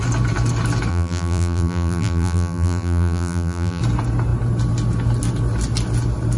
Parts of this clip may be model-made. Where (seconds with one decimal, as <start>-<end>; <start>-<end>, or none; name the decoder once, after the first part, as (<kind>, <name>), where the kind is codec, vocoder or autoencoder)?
0.9-3.8 (vocoder, BigVGAN v2)